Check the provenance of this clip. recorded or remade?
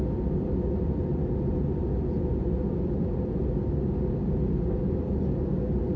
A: recorded